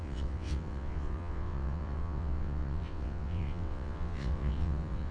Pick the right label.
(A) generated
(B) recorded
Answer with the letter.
A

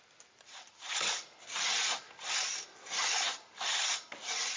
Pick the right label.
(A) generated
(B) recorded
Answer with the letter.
B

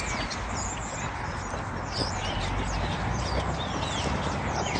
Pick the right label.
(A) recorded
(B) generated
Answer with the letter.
A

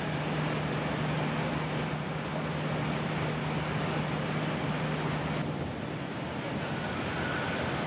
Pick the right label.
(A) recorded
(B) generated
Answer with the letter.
A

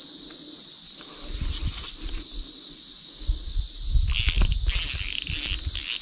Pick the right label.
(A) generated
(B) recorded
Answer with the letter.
B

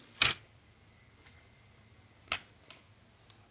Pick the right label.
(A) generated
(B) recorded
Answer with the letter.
B